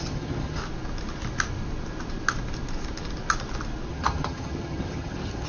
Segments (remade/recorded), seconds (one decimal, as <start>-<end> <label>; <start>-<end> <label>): 0.0-0.6 remade; 0.6-3.9 recorded; 3.9-5.5 remade